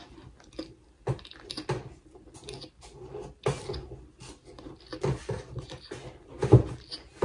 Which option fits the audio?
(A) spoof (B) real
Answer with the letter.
B